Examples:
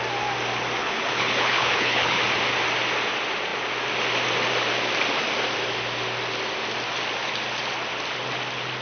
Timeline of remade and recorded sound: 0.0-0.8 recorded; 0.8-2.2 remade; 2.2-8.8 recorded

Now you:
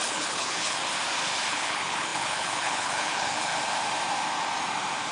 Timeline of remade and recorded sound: 0.0-0.8 remade; 0.8-1.5 recorded; 1.5-3.5 remade; 3.5-5.1 recorded

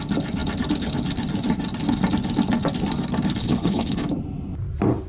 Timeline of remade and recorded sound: 0.0-3.4 recorded; 3.4-4.1 remade; 4.1-5.1 recorded

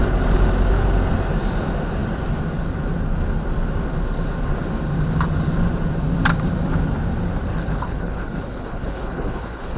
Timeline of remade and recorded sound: 0.0-7.5 recorded; 7.5-9.8 remade

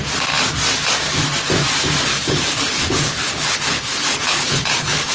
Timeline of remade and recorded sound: 0.0-2.1 recorded; 2.1-5.1 remade

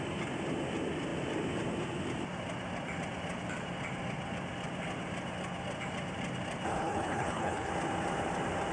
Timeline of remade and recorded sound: 0.0-6.7 recorded; 6.7-7.7 remade; 7.7-8.7 recorded

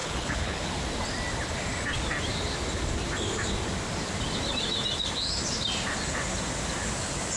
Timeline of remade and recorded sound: 0.0-0.7 remade; 0.7-7.4 recorded